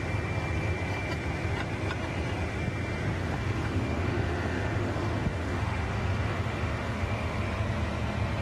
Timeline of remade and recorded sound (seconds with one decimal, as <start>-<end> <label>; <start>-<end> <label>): 0.0-3.2 recorded; 3.2-7.4 remade; 7.4-8.4 recorded